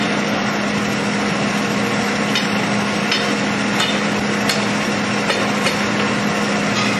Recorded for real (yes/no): yes